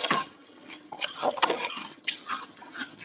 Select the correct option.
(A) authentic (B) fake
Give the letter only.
B